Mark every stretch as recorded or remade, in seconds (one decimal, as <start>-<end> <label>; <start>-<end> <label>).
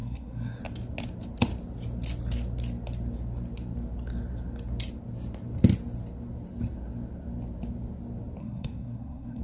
0.0-0.6 remade; 0.6-8.4 recorded; 8.4-9.4 remade